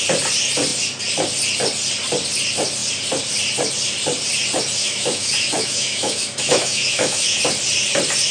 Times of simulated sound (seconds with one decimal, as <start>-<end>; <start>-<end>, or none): 4.8-7.4